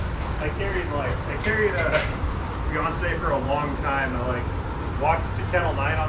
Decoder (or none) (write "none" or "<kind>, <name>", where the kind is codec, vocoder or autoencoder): none